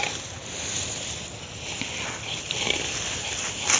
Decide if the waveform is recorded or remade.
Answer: recorded